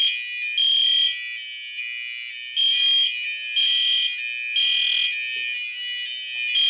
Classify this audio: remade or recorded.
recorded